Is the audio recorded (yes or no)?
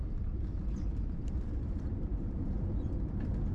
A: no